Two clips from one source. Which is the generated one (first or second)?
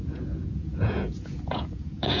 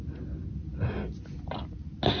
first